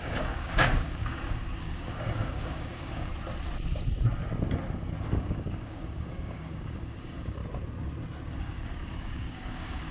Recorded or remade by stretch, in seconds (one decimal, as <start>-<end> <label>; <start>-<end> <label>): 0.0-3.1 remade; 3.1-5.1 recorded; 5.1-7.4 remade; 7.4-8.3 recorded; 8.3-9.9 remade